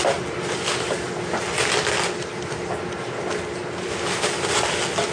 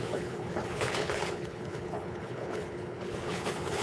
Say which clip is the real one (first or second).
first